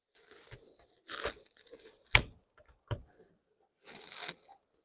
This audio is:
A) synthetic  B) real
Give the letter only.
B